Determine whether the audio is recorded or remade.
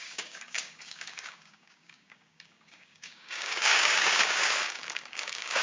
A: remade